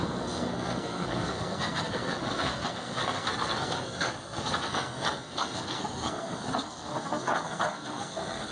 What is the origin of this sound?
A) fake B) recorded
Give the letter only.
A